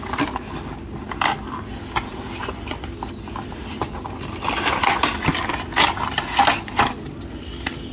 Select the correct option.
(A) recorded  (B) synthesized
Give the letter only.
A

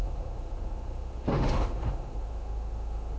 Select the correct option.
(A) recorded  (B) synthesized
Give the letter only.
B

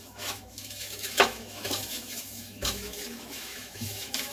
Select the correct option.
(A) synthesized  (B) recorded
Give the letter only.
A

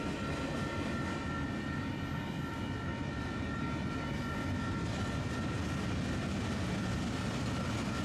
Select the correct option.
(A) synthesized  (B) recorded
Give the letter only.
B